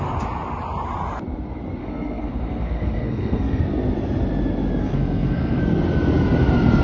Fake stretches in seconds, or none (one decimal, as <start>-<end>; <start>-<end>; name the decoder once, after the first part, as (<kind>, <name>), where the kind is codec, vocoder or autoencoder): 1.8-3.6 (codec, SNAC); 4.8-5.6